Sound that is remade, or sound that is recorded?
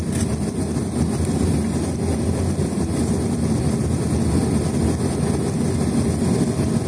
recorded